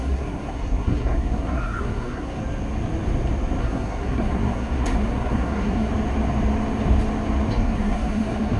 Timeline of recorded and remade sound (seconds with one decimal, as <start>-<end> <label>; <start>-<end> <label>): 0.0-2.4 remade; 2.4-3.6 recorded; 3.6-5.9 remade; 5.9-7.5 recorded; 7.5-8.6 remade